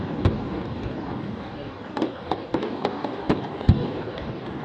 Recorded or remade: remade